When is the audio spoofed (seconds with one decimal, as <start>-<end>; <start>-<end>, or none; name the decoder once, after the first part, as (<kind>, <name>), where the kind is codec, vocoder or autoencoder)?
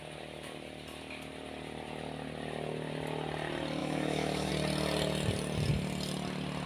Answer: 3.8-4.5 (autoencoder, DAC-VAE)